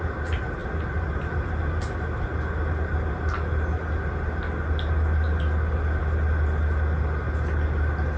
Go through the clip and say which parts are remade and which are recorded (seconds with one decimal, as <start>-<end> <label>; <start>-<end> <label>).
0.0-8.2 recorded